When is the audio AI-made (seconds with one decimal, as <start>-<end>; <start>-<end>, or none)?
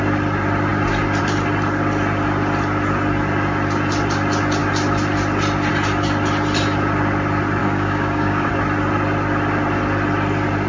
7.6-8.5